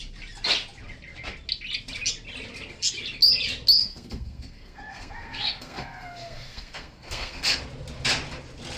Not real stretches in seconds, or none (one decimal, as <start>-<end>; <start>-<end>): 3.8-7.6